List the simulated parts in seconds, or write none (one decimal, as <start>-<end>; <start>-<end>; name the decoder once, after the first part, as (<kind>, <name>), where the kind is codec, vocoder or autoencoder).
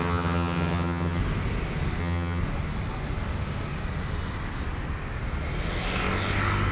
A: 0.0-1.2 (vocoder, HiFi-GAN); 2.0-2.4